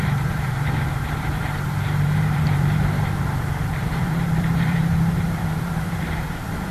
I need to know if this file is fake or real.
fake